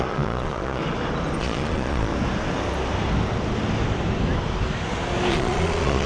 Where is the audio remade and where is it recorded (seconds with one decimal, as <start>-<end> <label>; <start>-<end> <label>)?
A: 0.0-0.8 remade; 0.8-1.4 recorded; 1.4-2.1 remade; 2.1-5.3 recorded; 5.3-6.1 remade